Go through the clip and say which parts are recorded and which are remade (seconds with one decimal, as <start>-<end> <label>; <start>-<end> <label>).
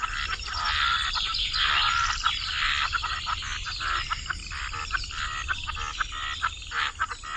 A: 0.0-7.4 recorded